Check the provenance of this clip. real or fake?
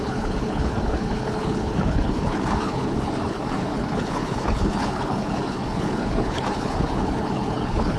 fake